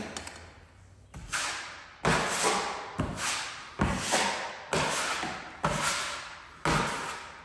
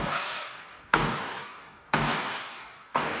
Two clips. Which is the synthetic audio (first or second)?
second